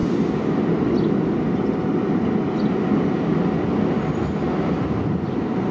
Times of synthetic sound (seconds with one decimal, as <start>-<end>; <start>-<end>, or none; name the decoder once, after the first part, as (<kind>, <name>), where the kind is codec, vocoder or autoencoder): none